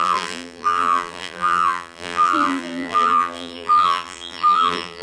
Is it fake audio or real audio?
fake